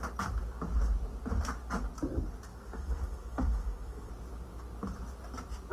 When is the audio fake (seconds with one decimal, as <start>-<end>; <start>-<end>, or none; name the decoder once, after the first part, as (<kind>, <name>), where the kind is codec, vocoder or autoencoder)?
2.5-4.1 (codec, SNAC)